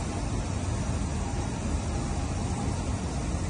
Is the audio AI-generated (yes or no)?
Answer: no